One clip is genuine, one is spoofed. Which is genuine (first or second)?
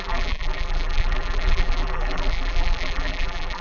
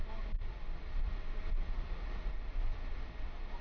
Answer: second